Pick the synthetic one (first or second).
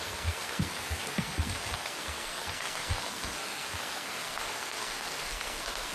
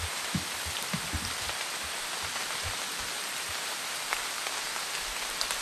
first